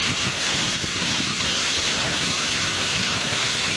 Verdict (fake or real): fake